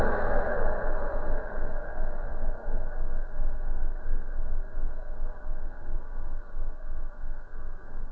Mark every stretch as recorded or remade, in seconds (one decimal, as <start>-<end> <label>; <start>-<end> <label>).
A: 0.0-8.1 remade